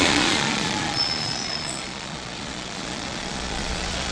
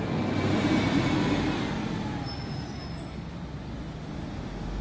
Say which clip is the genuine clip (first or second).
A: second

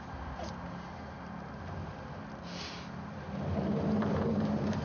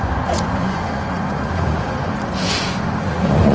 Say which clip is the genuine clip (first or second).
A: first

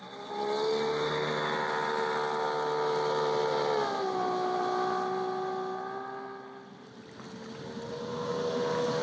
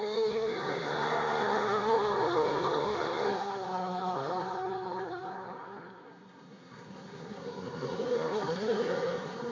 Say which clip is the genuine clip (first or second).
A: first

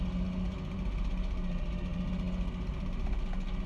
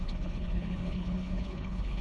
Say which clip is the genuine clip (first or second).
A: first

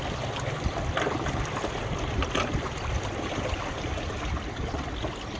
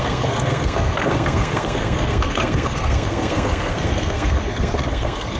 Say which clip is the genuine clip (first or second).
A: first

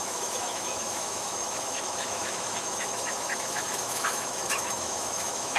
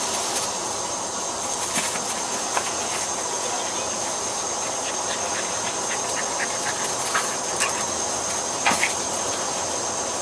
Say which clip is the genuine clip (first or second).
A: second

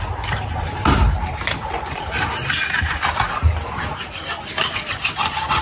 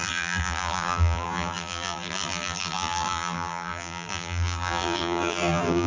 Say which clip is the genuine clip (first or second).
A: first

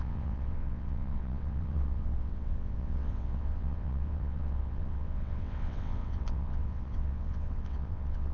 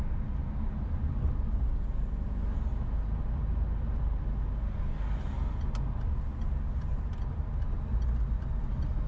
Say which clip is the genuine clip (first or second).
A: second